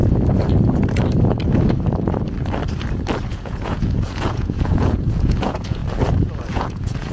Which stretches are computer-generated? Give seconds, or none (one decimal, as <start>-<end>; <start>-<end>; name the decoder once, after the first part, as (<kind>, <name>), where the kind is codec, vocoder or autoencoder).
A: 3.3-5.8 (vocoder, Vocos); 6.5-7.1